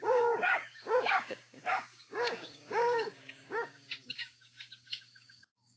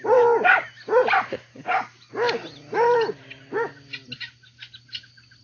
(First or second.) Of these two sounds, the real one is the second